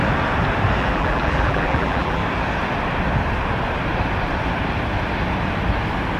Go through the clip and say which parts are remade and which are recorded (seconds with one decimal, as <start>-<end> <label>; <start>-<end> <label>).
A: 0.0-0.8 recorded; 0.8-2.2 remade; 2.2-6.2 recorded